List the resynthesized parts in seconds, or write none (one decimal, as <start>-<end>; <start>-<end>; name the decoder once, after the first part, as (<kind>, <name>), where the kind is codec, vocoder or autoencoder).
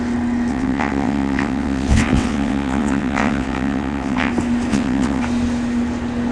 0.5-4.3 (vocoder, WaveNeXt); 4.7-5.2